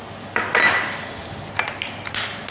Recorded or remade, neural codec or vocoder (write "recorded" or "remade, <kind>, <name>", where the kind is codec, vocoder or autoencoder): recorded